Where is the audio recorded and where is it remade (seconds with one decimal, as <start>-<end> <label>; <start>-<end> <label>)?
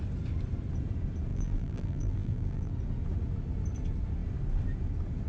0.0-1.3 recorded; 1.3-2.7 remade; 2.7-5.3 recorded